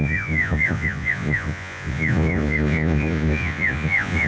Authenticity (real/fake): fake